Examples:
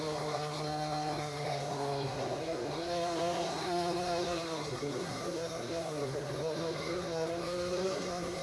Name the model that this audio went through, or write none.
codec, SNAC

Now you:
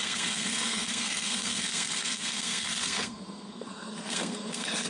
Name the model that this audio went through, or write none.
codec, SNAC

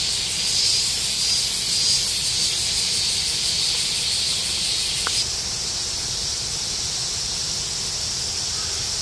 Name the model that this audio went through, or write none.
none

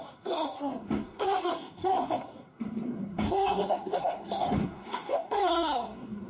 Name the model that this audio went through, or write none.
codec, SNAC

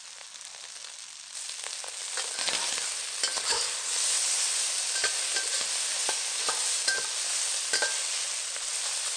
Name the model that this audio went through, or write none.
none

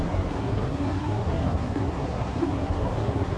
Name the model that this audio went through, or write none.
codec, SNAC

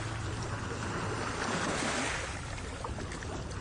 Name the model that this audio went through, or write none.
none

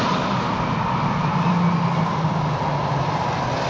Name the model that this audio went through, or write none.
none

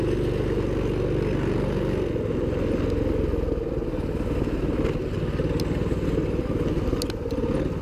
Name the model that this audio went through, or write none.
none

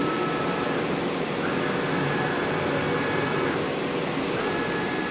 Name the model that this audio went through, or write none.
none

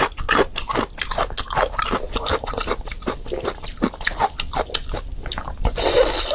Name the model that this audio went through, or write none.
none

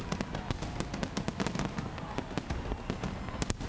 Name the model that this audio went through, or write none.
none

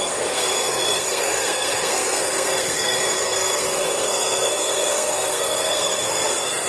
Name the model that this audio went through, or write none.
codec, SNAC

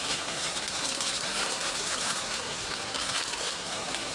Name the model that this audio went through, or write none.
codec, SNAC